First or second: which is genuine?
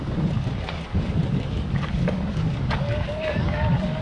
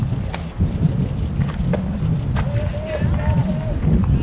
second